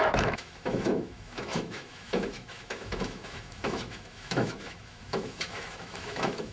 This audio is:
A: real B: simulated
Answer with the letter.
B